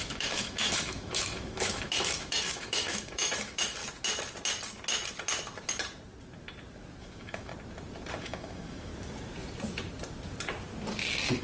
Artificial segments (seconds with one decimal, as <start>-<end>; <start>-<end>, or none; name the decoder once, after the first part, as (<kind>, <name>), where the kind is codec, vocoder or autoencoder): 0.0-3.8 (autoencoder, DAC-VAE); 7.0-7.5; 8.2-8.9